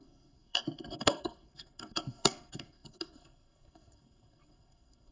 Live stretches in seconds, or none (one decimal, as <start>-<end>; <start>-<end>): none